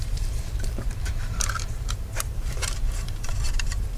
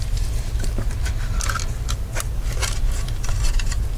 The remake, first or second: first